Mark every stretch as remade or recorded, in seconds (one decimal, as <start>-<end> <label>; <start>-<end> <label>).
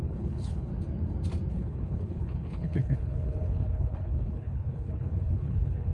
0.0-0.7 remade; 0.7-1.5 recorded; 1.5-5.9 remade